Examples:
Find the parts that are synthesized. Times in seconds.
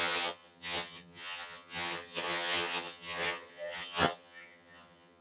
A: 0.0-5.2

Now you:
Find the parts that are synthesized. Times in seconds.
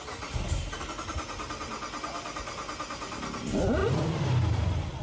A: none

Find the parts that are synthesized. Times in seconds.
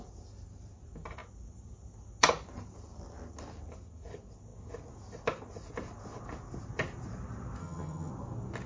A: 7.6-8.1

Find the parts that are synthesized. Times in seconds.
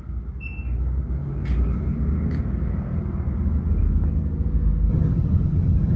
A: 4.9-6.0